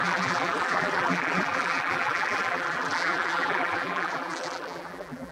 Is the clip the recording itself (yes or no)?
no